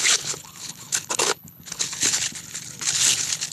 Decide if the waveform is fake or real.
fake